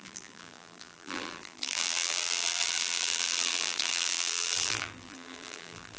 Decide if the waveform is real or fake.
fake